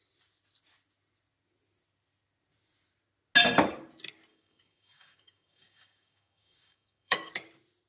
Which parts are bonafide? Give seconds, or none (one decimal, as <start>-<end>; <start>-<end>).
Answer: 0.0-4.3; 7.3-7.9